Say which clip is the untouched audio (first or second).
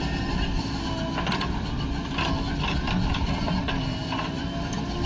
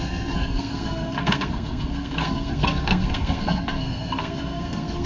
first